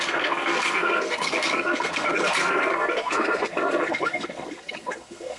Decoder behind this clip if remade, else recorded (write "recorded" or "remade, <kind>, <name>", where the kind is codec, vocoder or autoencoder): remade, codec, SNAC